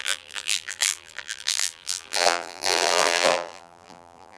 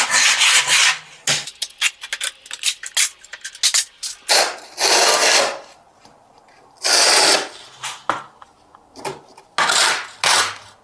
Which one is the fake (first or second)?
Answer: first